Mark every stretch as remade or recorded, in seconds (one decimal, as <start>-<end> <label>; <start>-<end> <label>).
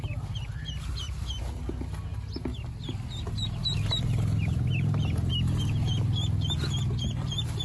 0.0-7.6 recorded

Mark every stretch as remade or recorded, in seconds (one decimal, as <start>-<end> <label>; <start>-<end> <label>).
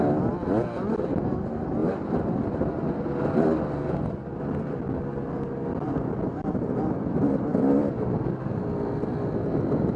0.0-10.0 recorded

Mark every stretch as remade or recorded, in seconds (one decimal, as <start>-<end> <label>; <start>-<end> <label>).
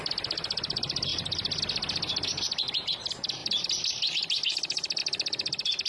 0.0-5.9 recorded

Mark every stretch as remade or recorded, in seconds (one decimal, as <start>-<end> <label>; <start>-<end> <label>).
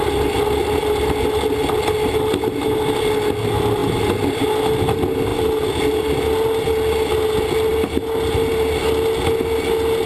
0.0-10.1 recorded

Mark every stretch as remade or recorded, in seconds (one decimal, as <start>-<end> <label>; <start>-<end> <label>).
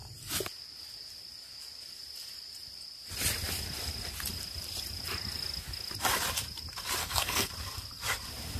0.0-7.0 recorded; 7.0-7.5 remade; 7.5-8.6 recorded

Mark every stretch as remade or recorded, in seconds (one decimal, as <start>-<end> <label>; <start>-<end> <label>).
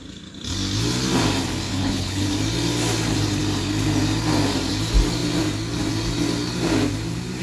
0.0-1.7 recorded; 1.7-2.3 remade; 2.3-7.4 recorded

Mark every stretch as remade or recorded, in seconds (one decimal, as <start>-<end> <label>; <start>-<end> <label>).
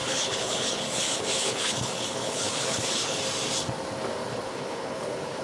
0.0-3.2 remade; 3.2-4.2 recorded; 4.2-5.4 remade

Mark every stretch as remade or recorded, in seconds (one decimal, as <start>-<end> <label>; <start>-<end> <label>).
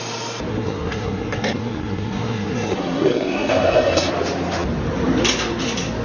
0.0-0.5 recorded; 0.5-4.1 remade; 4.1-6.0 recorded